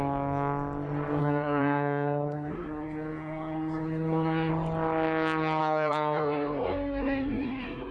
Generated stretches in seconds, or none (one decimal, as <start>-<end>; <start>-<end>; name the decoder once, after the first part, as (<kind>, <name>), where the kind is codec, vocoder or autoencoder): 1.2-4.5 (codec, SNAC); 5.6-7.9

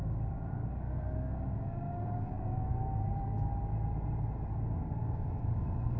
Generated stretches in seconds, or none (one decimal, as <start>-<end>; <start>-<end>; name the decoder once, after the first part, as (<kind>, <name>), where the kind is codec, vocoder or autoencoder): 0.0-3.5 (codec, DAC); 4.5-6.0

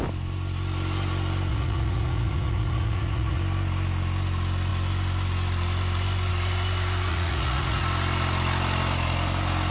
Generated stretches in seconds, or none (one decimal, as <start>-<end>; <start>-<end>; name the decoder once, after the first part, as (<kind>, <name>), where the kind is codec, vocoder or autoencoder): 1.5-3.4 (vocoder, Vocos); 7.1-7.8

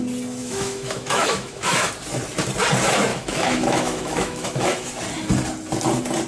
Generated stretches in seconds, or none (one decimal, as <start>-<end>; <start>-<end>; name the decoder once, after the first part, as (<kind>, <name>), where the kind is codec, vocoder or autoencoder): 0.4-1.9 (autoencoder, DAC-VAE); 3.1-4.9